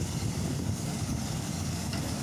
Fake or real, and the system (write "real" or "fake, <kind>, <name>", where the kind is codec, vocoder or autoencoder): fake, codec, DAC